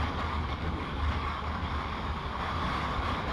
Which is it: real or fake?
fake